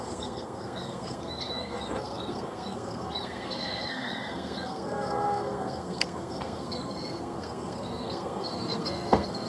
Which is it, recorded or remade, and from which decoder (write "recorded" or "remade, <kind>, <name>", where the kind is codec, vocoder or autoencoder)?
remade, codec, SNAC